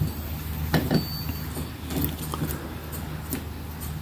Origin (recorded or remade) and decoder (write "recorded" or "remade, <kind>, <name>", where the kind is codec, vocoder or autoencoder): recorded